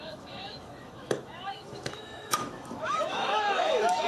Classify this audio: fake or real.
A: fake